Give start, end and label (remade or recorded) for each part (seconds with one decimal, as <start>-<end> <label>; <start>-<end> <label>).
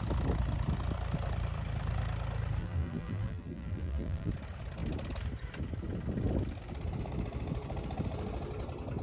0.0-2.6 recorded; 2.6-4.3 remade; 4.3-9.0 recorded